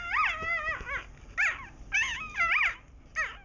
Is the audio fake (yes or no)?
no